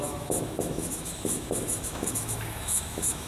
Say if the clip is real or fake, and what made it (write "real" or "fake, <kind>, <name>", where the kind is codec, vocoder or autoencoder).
fake, autoencoder, DAC-VAE